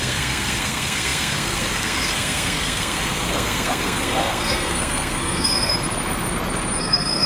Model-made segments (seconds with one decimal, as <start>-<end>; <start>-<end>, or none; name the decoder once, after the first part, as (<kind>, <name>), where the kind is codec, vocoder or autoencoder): 0.0-5.7 (codec, SNAC); 6.8-7.3